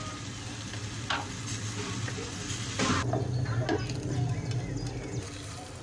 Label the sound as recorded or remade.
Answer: recorded